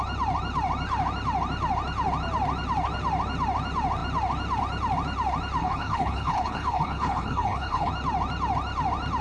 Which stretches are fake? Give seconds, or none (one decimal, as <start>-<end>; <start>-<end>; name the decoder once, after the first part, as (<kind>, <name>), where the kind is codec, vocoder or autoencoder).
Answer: 5.6-7.9 (codec, HILCodec)